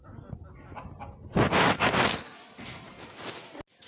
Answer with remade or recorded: recorded